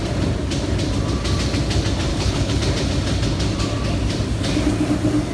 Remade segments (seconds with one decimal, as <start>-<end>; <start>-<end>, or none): 2.1-2.6